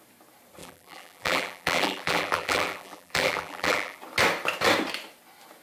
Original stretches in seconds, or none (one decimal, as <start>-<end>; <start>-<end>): 0.0-0.6; 4.0-5.6